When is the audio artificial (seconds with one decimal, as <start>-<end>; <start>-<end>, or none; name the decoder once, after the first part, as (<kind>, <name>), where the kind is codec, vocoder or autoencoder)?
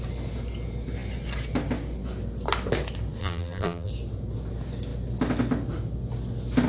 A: 3.2-3.9 (vocoder, BigVGAN v2)